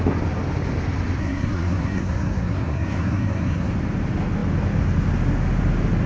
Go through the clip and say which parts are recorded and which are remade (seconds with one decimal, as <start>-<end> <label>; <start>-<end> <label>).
0.0-1.2 recorded; 1.2-3.7 remade; 3.7-6.1 recorded